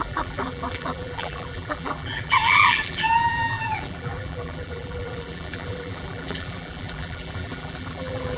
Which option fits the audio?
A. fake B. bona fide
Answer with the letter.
A